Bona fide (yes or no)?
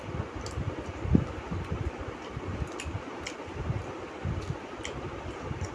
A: yes